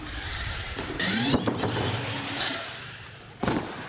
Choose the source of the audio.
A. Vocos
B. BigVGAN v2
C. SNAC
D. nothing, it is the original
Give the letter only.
B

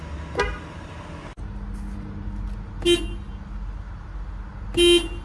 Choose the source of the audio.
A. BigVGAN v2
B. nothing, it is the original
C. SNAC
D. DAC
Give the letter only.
B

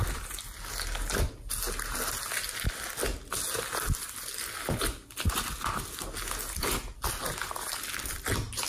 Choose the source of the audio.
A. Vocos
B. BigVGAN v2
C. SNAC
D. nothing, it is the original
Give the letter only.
D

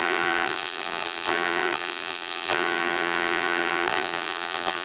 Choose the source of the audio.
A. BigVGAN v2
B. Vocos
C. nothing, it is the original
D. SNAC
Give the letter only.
A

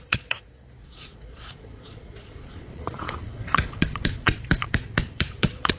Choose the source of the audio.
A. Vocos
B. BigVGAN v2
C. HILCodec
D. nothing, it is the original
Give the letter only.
A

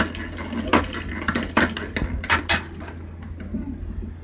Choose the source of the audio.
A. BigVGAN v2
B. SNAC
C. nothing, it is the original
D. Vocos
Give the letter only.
C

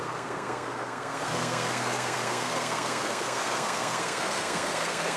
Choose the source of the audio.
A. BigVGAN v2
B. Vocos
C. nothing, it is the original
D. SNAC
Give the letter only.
D